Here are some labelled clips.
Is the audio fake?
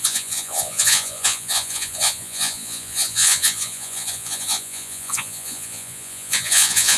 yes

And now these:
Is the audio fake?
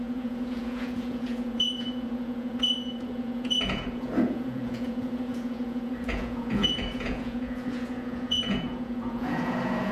yes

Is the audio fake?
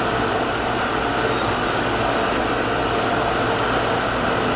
no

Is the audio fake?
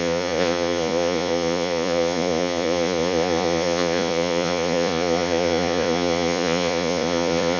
yes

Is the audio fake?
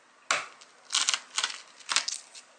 no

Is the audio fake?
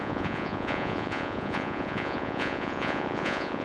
yes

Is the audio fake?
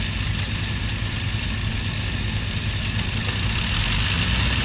no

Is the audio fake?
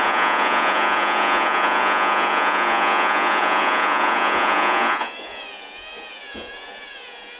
yes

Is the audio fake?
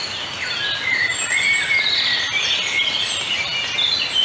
no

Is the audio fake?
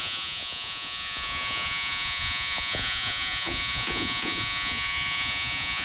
yes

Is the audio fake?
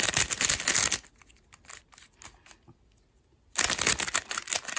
no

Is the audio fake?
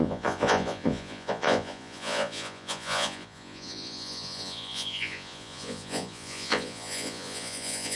yes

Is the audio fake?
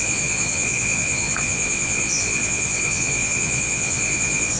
yes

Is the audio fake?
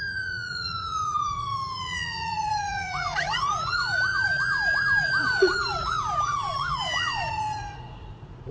yes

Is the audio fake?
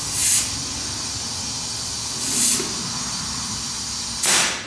no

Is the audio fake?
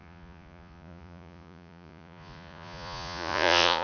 yes